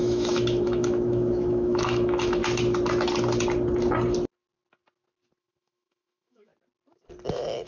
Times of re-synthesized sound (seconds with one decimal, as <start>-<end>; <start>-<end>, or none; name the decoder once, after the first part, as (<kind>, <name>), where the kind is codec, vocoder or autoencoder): 0.0-2.4 (autoencoder, DAC-VAE); 5.4-6.5; 7.3-7.7